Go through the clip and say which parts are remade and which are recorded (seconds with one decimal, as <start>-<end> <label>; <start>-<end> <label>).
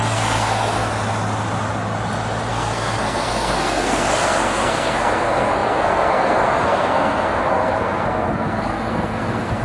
0.0-0.9 remade; 0.9-2.5 recorded; 2.5-9.6 remade